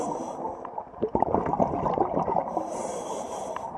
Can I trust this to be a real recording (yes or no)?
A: yes